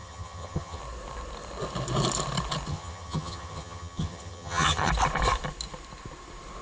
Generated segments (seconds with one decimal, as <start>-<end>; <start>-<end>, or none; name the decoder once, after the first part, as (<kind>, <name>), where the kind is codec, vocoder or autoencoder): 0.0-0.8 (vocoder, HiFi-GAN); 2.7-4.9